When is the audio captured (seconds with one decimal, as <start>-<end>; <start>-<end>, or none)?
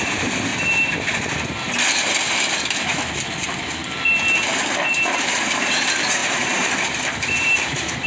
0.5-3.3; 3.8-4.9